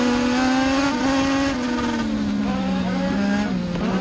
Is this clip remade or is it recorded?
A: recorded